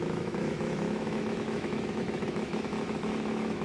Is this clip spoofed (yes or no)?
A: yes